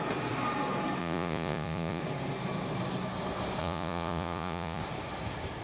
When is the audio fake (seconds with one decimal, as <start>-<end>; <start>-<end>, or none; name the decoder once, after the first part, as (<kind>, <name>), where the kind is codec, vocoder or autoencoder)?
1.0-2.0 (vocoder, Vocos); 3.6-4.8